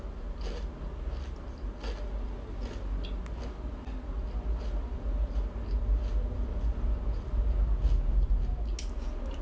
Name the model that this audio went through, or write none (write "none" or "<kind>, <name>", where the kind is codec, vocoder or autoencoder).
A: none